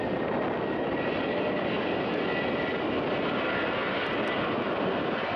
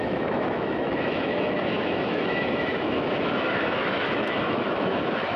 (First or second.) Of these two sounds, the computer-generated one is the second